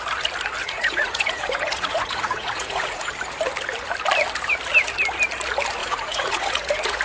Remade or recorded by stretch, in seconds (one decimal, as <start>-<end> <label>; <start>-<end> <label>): 0.0-0.6 recorded; 0.6-3.1 remade; 3.1-5.8 recorded; 5.8-7.0 remade